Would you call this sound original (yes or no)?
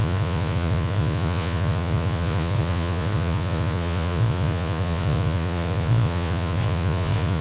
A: no